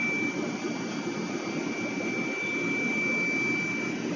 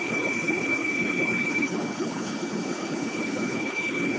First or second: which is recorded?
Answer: first